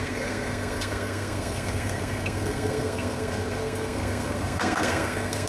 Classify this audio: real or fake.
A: fake